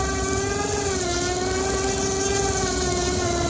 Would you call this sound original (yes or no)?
yes